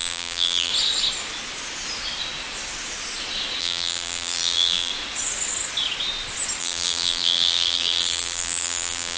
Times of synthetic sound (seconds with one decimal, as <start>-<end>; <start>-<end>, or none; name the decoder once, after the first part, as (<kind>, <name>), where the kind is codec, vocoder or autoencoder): 0.0-0.7 (vocoder, BigVGAN v2); 3.6-4.9; 6.6-9.2